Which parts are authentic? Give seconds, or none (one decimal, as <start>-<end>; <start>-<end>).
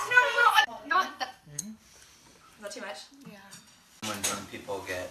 1.6-5.1